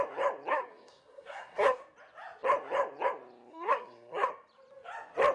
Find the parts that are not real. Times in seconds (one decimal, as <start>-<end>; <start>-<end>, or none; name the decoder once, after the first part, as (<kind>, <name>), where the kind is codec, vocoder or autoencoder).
0.5-1.8 (codec, SNAC); 3.5-4.3